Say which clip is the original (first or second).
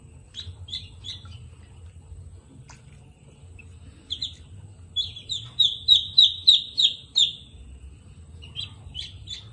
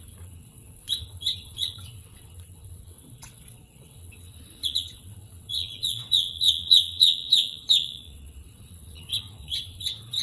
first